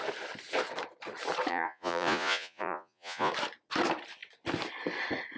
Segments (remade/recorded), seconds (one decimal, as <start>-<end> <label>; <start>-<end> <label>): 0.0-1.5 recorded; 1.5-3.3 remade; 3.3-5.4 recorded